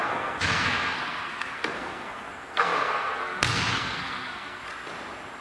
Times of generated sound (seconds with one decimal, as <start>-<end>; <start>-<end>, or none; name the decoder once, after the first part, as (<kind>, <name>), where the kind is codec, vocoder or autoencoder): 0.0-4.6 (codec, SNAC)